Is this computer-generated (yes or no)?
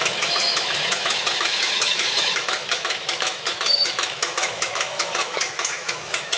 yes